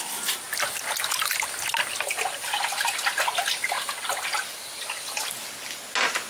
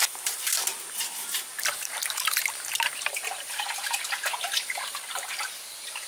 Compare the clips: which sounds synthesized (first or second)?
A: second